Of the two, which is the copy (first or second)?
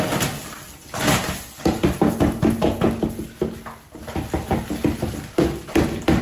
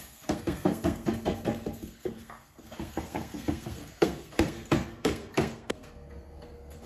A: second